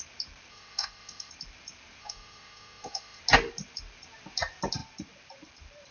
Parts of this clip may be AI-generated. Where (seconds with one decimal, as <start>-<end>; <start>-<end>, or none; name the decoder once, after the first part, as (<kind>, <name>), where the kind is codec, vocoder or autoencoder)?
0.5-1.3 (autoencoder, DAC-VAE); 2.0-3.2